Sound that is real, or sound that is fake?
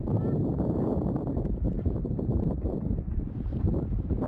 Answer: fake